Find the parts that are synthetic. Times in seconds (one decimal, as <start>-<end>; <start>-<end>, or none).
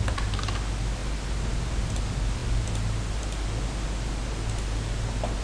none